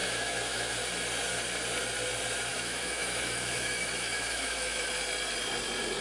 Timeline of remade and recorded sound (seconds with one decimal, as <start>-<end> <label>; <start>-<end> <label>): 0.0-0.7 remade; 0.7-2.5 recorded; 2.5-4.9 remade; 4.9-6.0 recorded